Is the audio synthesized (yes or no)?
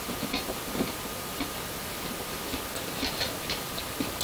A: no